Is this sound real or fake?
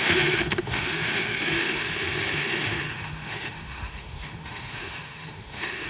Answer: fake